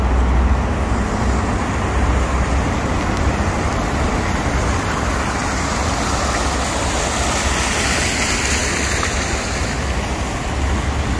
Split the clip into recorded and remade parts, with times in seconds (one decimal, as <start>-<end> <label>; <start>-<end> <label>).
0.0-11.2 recorded